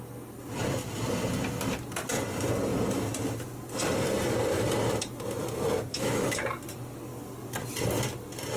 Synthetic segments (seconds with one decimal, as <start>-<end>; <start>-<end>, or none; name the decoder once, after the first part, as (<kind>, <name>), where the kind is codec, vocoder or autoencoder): 5.9-6.4 (autoencoder, DAC-VAE)